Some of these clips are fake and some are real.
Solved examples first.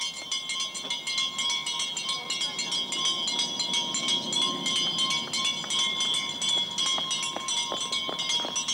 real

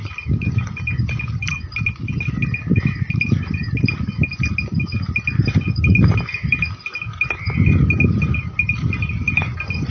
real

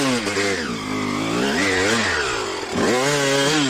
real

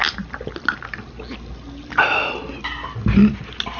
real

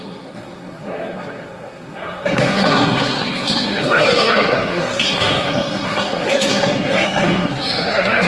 fake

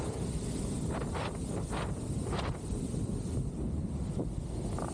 real